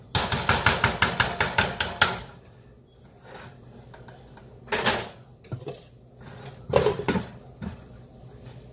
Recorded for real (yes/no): yes